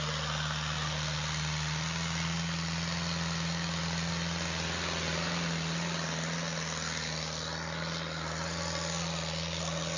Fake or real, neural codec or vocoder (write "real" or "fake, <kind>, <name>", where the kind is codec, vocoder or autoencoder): real